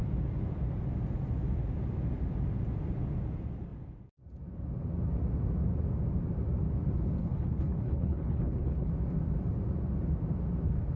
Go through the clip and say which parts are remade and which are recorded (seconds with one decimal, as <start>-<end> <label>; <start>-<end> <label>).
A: 0.0-7.2 recorded; 7.2-8.9 remade; 8.9-11.0 recorded

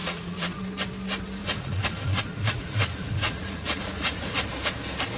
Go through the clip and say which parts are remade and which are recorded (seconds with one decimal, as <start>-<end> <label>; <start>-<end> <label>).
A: 0.0-0.6 remade; 0.6-1.4 recorded; 1.4-4.5 remade; 4.5-5.2 recorded

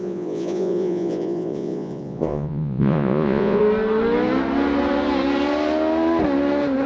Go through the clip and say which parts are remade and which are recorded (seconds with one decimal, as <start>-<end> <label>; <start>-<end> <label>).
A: 0.0-3.6 remade; 3.6-6.9 recorded

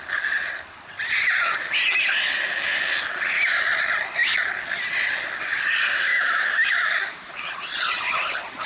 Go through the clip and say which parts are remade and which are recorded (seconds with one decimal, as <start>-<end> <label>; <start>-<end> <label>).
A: 0.0-6.1 recorded; 6.1-7.3 remade; 7.3-8.7 recorded

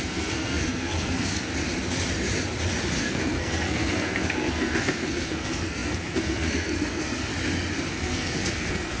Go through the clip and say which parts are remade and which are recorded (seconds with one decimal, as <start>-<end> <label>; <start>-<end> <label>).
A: 0.0-1.5 remade; 1.5-3.0 recorded; 3.0-7.3 remade; 7.3-7.9 recorded; 7.9-9.0 remade